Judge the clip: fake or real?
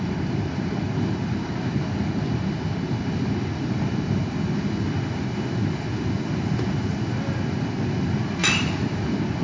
fake